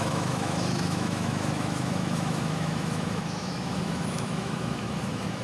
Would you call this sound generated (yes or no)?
yes